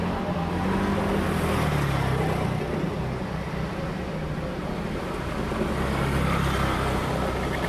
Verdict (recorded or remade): recorded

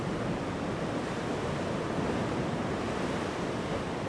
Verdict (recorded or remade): recorded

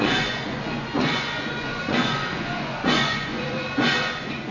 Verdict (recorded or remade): remade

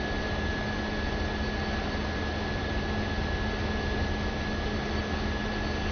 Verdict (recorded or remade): recorded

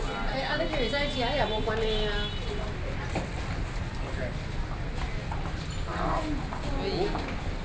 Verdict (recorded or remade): recorded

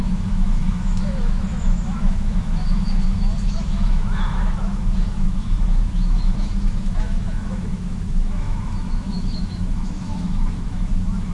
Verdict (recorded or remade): remade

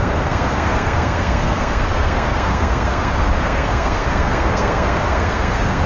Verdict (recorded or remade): remade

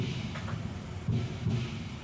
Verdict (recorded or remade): remade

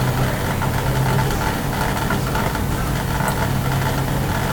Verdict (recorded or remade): recorded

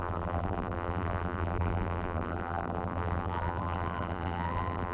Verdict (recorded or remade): remade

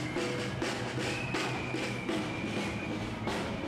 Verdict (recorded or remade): recorded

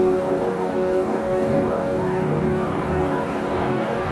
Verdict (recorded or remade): remade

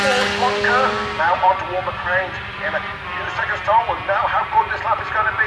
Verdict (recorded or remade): recorded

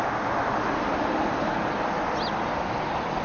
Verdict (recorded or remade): recorded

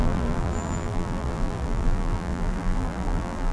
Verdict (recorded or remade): remade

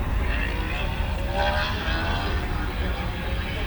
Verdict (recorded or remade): recorded